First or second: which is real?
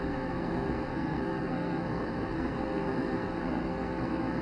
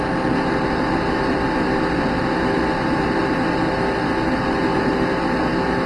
second